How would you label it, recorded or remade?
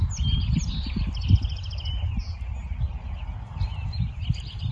recorded